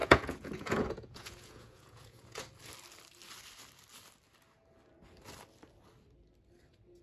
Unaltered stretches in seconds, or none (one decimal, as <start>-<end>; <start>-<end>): 2.4-7.0